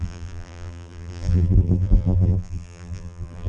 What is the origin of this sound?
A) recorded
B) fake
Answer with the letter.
B